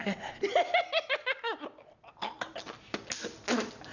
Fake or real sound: real